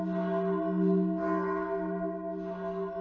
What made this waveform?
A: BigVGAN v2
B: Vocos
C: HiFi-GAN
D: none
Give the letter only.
D